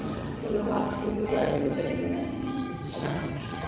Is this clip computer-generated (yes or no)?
yes